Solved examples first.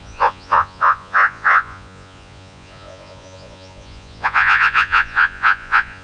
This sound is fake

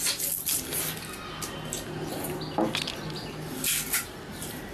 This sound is real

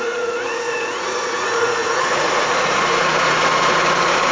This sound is fake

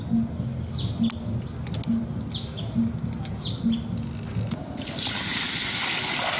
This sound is real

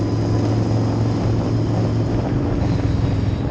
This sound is real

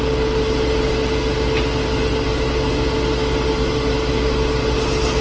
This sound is real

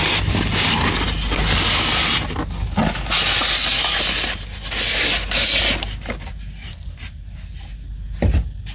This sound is real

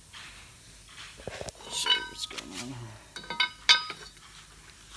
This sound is real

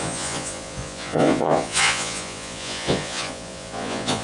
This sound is fake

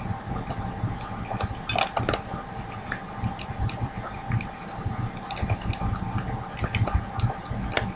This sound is real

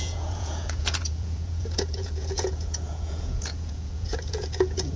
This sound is fake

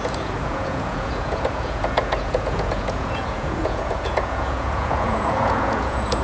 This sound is fake